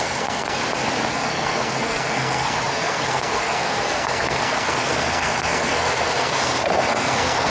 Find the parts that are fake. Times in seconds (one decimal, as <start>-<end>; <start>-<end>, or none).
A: 0.0-0.6; 1.1-7.5